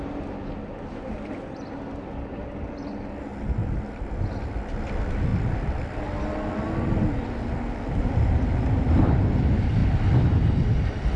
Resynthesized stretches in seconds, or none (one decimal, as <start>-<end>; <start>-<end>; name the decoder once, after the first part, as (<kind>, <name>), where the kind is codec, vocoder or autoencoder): none